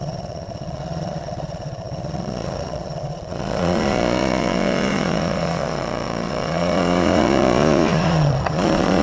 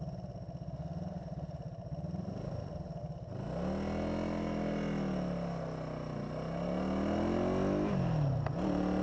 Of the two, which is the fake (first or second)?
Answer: first